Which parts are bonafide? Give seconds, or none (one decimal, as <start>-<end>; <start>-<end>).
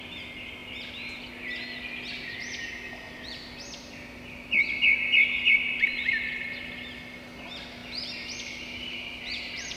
0.6-5.5; 7.8-8.4